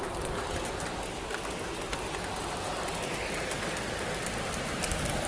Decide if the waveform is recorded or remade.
recorded